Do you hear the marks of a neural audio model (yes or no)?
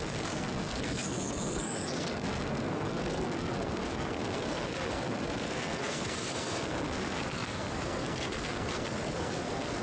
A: yes